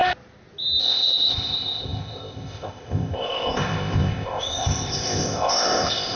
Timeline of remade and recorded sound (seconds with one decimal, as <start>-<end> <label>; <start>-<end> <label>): 0.0-0.8 recorded; 0.8-6.2 remade

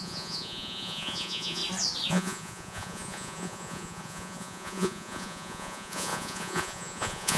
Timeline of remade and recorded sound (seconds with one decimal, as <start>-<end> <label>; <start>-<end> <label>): 0.0-1.6 remade; 1.6-2.1 recorded; 2.1-7.4 remade

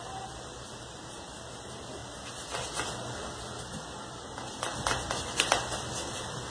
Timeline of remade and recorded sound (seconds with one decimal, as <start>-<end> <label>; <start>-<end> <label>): 0.0-6.5 recorded

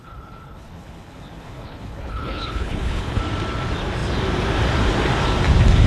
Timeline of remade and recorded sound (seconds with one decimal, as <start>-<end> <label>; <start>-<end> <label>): 0.0-3.2 remade; 3.2-5.9 recorded

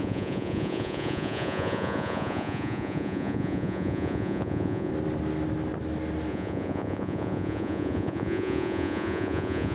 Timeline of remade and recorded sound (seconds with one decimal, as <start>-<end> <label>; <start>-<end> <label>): 0.0-4.9 remade; 4.9-6.3 recorded; 6.3-9.7 remade

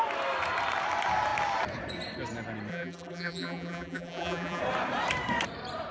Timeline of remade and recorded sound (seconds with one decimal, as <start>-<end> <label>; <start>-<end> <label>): 0.0-2.7 recorded; 2.7-4.6 remade; 4.6-5.9 recorded

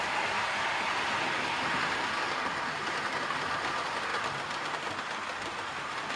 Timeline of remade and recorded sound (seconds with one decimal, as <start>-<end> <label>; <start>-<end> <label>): 0.0-6.2 recorded